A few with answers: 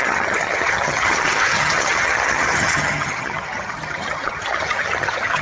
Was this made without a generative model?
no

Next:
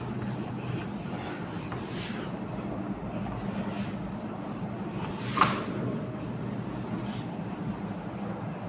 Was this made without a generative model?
yes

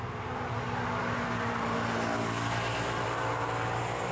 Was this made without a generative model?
yes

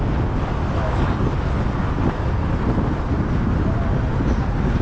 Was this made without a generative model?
yes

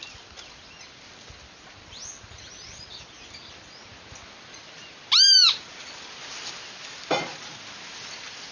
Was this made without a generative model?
yes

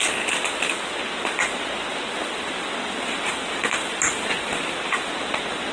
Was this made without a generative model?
yes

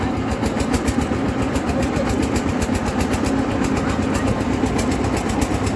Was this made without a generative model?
yes